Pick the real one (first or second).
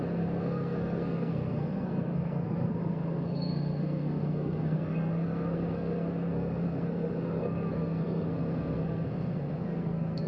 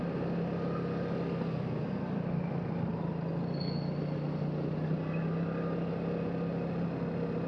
second